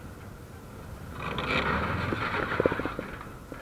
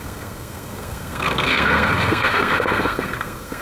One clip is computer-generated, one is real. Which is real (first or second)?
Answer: first